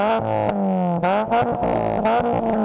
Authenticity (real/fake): real